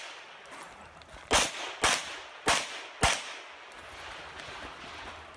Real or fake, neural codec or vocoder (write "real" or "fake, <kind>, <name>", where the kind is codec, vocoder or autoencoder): real